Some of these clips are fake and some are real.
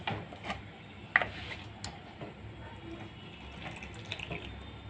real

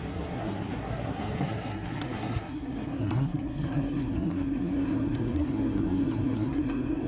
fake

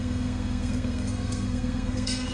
fake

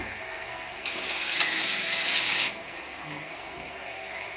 fake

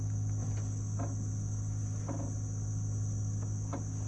real